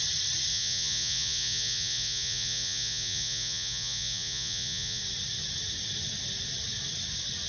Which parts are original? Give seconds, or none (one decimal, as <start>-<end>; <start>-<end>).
0.0-0.5; 5.0-7.5

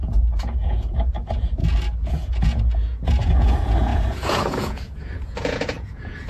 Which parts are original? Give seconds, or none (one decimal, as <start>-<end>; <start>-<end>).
1.6-2.1

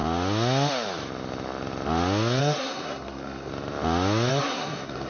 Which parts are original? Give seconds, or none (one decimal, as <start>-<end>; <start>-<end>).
0.0-2.4; 3.5-4.3

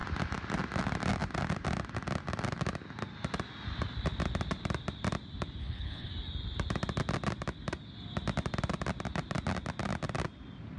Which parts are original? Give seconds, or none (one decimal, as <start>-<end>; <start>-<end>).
0.0-5.6; 6.1-10.8

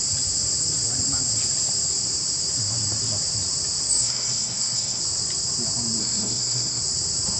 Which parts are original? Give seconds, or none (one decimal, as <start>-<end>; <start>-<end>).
0.0-3.9; 5.0-6.0; 6.8-7.4

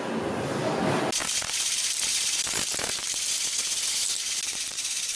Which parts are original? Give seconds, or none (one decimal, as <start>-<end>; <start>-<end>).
0.0-5.2

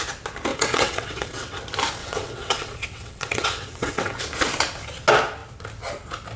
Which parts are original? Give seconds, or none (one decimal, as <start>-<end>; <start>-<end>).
0.0-0.5; 1.6-2.0; 4.2-6.4

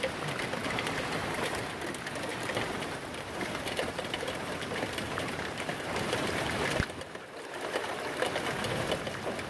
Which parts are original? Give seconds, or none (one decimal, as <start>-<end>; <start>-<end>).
0.0-0.6; 1.7-2.3; 7.0-9.5